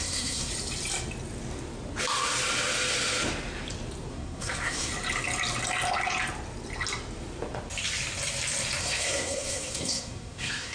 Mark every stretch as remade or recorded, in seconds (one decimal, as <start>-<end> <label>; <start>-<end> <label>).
0.0-0.5 remade; 0.5-4.1 recorded; 4.1-4.9 remade; 4.9-8.8 recorded; 8.8-10.7 remade